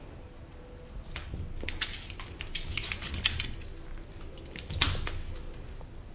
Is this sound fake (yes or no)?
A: no